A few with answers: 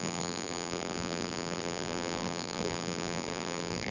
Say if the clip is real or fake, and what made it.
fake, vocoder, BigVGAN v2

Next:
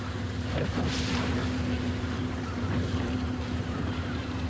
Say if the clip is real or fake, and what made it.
fake, vocoder, BigVGAN v2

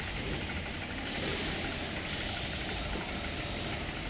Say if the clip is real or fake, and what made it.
fake, vocoder, BigVGAN v2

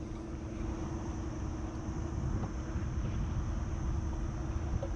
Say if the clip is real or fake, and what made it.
real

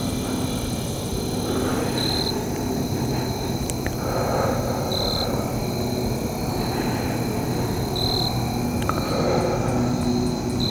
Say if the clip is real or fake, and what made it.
real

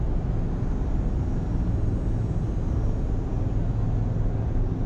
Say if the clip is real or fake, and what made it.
real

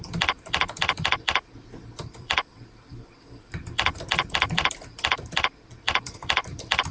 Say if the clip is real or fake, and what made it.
fake, vocoder, BigVGAN v2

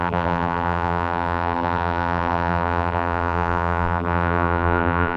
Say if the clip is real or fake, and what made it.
fake, vocoder, BigVGAN v2